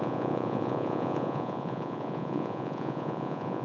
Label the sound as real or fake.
fake